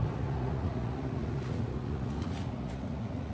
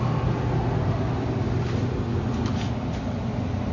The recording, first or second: second